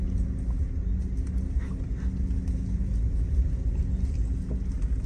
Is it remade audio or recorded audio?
recorded